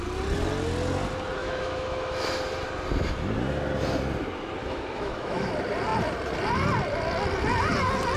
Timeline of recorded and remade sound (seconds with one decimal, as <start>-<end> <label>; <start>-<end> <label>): 0.0-1.4 recorded; 1.4-2.3 remade; 2.3-4.6 recorded; 4.6-5.5 remade; 5.5-8.2 recorded